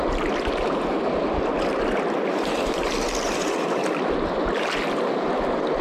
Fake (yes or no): no